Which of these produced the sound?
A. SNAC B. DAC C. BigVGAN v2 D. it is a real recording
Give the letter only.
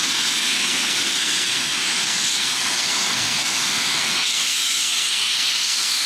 A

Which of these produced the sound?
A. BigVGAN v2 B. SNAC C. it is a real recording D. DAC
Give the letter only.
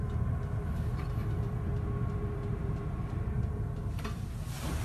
A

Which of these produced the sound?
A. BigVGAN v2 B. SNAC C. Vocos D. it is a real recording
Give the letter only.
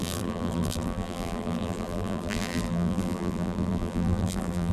A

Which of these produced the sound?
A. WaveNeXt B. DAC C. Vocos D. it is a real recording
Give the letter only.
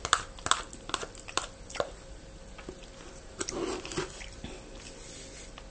D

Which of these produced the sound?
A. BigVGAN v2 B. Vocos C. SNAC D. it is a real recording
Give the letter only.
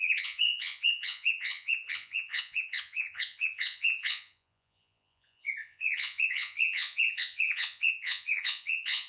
B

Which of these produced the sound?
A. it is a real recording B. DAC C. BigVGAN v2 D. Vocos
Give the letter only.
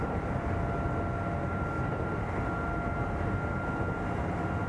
A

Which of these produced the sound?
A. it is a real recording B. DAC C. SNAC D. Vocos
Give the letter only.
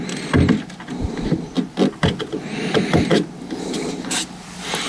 A